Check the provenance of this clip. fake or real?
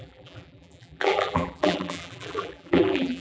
fake